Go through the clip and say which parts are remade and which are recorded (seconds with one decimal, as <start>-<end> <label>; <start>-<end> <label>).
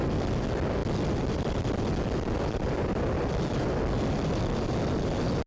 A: 0.0-5.5 recorded